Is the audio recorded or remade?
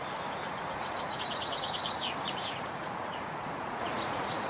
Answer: remade